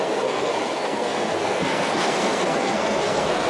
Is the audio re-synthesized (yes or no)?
yes